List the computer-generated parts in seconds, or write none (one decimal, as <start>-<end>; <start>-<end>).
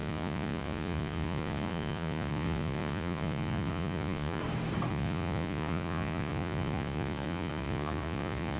0.0-4.4; 4.9-8.6